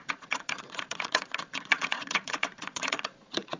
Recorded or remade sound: remade